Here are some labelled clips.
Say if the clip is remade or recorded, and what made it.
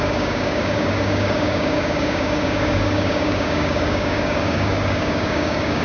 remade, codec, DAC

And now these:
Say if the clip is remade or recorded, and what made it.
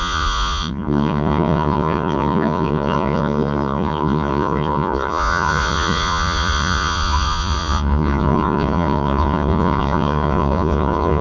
remade, vocoder, Vocos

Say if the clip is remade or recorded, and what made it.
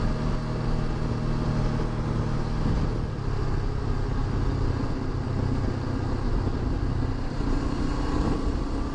recorded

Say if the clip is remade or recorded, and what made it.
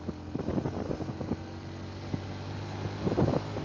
recorded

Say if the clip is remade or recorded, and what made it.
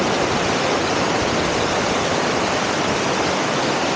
recorded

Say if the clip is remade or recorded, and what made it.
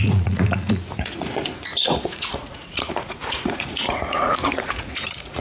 remade, vocoder, Vocos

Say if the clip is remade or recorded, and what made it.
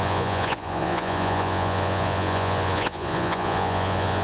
remade, vocoder, Vocos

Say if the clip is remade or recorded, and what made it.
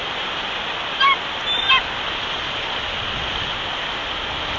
recorded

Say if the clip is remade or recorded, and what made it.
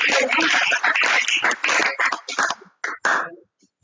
recorded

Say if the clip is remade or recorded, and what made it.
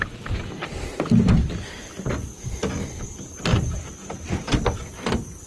recorded